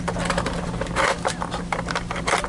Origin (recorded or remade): recorded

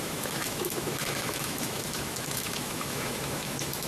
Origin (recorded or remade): remade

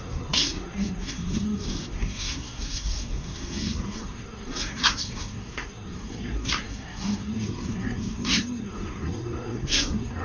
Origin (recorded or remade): remade